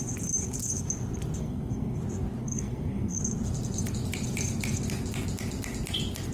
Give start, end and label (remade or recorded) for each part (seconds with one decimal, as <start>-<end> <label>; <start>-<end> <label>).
0.0-1.4 recorded; 1.4-2.0 remade; 2.0-2.4 recorded; 2.4-3.2 remade; 3.2-6.3 recorded